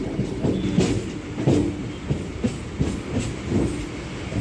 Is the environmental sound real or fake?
real